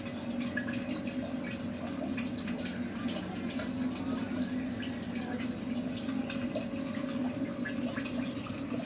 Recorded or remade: recorded